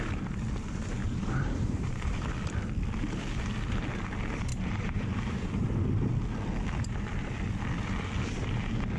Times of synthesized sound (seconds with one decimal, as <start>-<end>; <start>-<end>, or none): 1.0-2.2; 4.5-6.1